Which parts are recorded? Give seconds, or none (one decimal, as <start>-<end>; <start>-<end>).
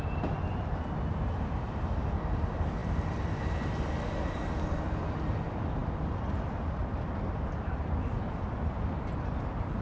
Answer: none